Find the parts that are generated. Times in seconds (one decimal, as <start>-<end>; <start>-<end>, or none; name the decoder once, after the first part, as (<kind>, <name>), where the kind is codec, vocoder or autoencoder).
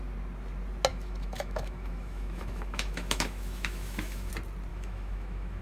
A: 0.9-4.3 (autoencoder, DAC-VAE); 4.7-5.6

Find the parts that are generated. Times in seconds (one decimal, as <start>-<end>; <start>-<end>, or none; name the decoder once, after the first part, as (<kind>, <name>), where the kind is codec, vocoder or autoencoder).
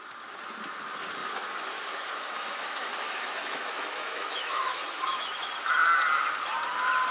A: 1.2-5.5 (autoencoder, DAC-VAE)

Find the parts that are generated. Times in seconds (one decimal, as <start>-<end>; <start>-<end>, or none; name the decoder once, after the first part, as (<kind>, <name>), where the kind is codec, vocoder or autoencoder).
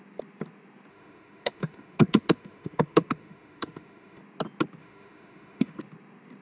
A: 0.9-4.2 (autoencoder, DAC-VAE); 4.8-5.8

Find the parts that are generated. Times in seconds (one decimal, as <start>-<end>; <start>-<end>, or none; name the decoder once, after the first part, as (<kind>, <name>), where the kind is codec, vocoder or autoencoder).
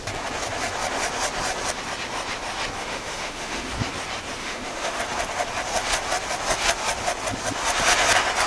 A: 2.8-3.7 (autoencoder, DAC-VAE); 4.4-5.0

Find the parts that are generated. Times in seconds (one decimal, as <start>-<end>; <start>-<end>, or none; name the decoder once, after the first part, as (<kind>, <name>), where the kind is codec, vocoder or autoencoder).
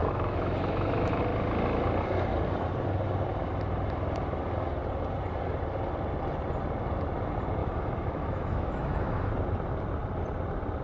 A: 0.0-1.2 (autoencoder, DAC-VAE); 7.6-9.3